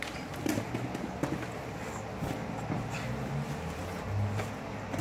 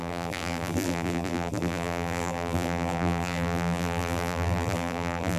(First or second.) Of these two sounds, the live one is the first